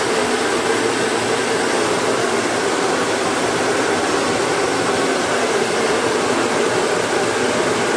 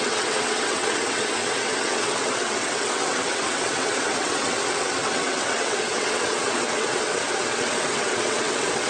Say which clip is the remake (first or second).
second